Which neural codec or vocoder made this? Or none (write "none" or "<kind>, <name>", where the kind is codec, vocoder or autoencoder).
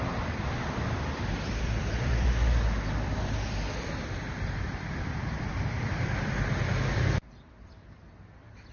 vocoder, BigVGAN v2